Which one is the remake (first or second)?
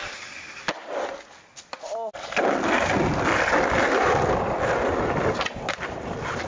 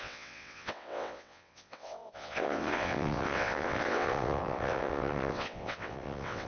second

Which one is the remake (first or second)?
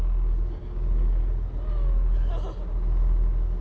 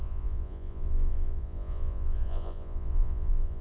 second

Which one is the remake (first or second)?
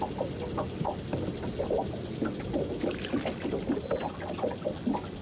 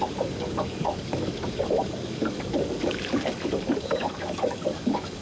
second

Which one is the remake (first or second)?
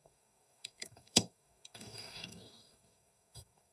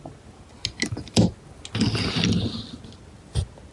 first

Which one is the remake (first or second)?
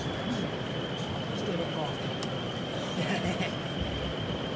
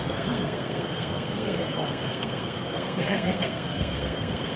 second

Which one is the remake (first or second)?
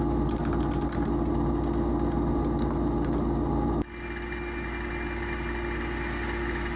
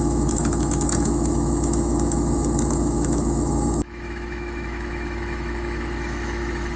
second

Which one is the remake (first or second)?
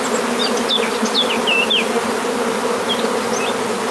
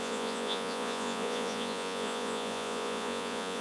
second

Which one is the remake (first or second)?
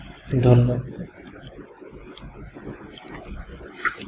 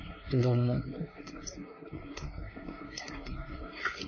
second